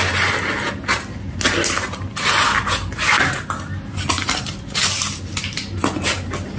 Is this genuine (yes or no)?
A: yes